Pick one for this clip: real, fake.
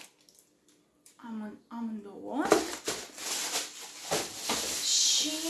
real